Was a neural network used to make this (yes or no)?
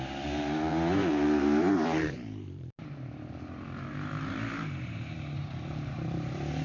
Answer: yes